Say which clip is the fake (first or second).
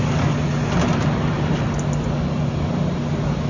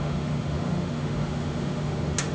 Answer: second